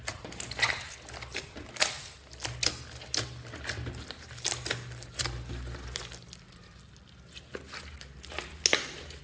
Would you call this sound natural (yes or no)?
yes